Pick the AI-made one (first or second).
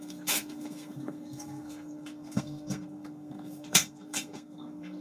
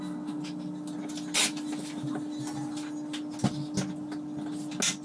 first